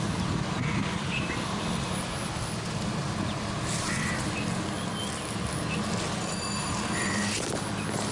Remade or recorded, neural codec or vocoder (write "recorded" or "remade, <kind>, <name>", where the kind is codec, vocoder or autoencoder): recorded